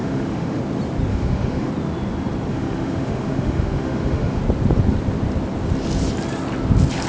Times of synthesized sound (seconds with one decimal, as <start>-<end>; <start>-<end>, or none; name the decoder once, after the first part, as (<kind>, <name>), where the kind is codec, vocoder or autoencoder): 0.0-0.6 (autoencoder, DAC-VAE); 1.1-1.7; 2.5-4.4